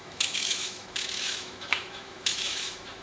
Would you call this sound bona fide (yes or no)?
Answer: no